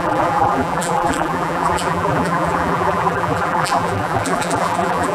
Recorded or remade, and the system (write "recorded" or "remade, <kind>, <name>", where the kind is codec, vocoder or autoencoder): remade, vocoder, BigVGAN v2